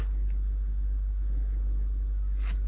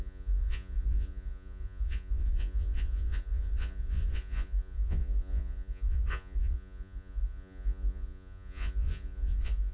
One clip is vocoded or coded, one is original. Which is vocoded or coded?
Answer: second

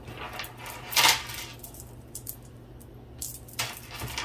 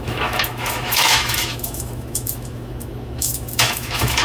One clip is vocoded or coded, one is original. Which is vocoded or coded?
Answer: second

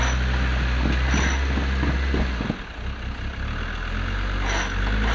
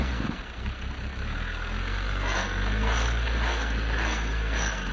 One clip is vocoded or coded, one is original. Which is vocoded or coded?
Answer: second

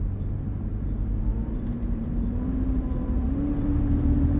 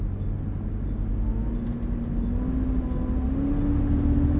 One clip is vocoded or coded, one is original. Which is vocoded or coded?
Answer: first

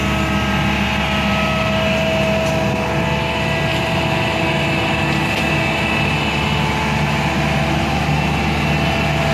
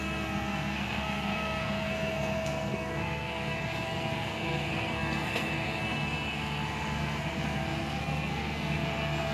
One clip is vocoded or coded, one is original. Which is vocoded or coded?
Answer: second